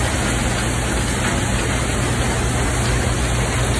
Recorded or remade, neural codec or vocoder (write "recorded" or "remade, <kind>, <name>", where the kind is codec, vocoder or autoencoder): recorded